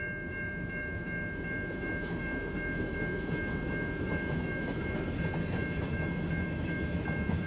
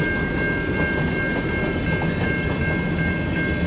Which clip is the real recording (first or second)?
second